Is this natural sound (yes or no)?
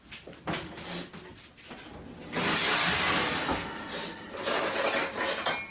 yes